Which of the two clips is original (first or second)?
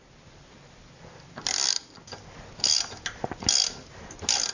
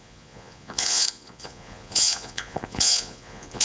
first